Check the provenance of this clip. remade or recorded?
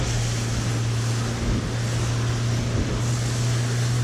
recorded